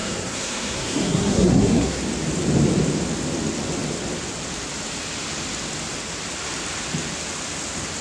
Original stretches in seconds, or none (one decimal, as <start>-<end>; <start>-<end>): 2.0-8.0

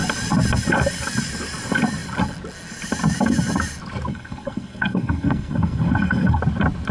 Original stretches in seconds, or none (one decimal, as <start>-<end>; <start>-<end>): 0.0-4.1; 6.4-6.9

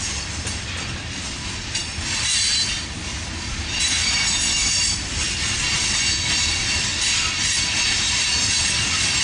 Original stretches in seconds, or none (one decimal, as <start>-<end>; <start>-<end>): 0.0-9.2

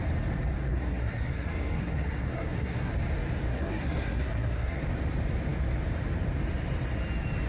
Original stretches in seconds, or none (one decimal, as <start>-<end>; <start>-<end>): 0.0-0.7; 2.9-3.5; 4.8-7.5

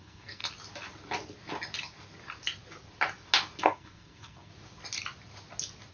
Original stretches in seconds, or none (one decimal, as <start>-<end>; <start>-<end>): 0.4-3.6; 4.5-5.9